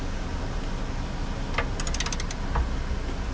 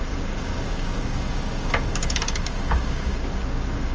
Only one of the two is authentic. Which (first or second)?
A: first